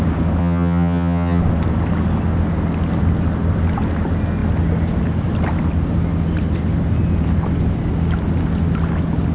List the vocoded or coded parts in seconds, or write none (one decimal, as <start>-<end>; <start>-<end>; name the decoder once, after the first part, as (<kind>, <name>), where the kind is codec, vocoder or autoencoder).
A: 0.4-1.4 (vocoder, HiFi-GAN)